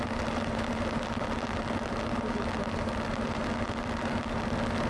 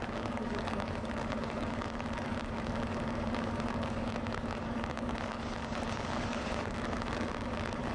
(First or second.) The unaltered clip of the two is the first